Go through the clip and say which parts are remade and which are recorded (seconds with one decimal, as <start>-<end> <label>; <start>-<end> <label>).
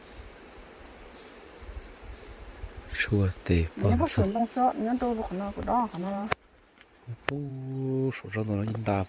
0.0-1.2 recorded; 1.2-3.4 remade; 3.4-3.8 recorded; 3.8-4.4 remade; 4.4-6.0 recorded; 6.0-7.5 remade; 7.5-9.1 recorded